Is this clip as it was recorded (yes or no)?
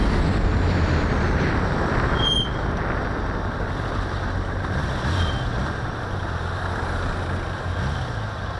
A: yes